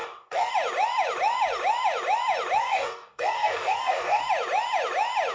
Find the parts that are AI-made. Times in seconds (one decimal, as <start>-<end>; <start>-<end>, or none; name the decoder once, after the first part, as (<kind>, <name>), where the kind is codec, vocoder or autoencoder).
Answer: 0.0-0.5 (codec, DAC); 2.6-4.2

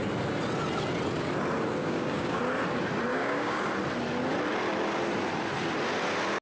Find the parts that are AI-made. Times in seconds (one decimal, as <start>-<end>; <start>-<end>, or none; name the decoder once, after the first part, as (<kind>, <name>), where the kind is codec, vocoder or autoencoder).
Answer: 1.8-2.4 (codec, DAC); 3.1-3.6